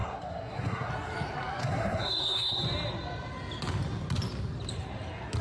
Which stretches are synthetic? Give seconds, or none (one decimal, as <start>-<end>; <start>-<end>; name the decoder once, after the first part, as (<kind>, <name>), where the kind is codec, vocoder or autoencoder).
0.0-0.9 (codec, SNAC); 1.6-2.6